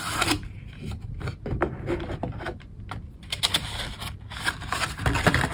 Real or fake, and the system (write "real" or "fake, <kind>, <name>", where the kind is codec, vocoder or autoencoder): real